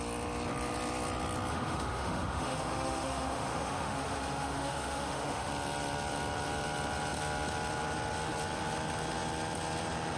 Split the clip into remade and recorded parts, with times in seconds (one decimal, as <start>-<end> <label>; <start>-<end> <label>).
0.0-1.5 recorded; 1.5-5.5 remade; 5.5-10.2 recorded